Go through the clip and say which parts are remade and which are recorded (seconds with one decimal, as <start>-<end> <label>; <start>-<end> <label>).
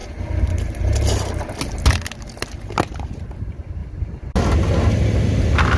0.0-5.8 recorded